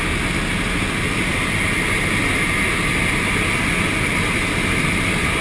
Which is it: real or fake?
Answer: real